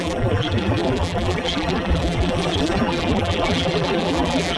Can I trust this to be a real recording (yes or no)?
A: no